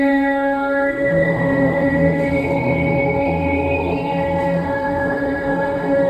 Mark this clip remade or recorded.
remade